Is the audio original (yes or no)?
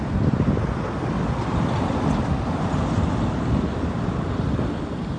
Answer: yes